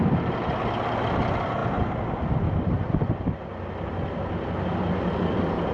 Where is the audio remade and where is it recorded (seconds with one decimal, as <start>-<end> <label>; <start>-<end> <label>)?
0.0-5.7 recorded